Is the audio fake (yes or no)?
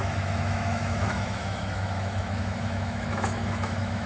yes